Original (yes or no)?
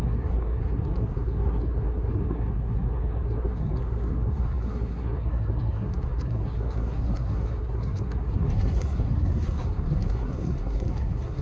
no